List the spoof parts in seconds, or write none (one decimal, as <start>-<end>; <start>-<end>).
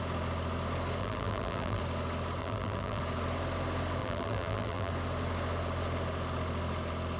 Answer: 1.0-1.8; 2.4-3.0; 4.0-4.9